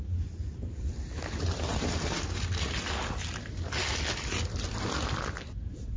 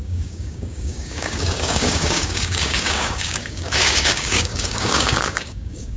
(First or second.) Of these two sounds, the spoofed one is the second